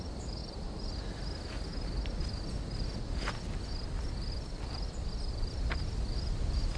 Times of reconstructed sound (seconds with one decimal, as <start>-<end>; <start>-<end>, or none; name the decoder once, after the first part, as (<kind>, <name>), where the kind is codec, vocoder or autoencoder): 0.0-0.4 (vocoder, BigVGAN v2); 3.7-6.8